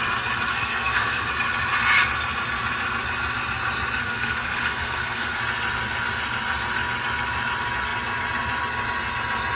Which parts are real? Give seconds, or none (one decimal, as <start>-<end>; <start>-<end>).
0.0-0.5; 1.3-4.0; 5.4-9.5